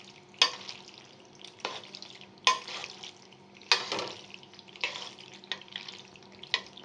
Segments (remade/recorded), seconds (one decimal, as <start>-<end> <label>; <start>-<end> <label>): 0.0-6.8 recorded